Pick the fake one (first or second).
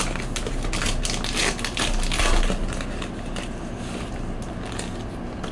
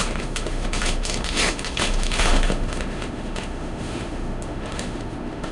second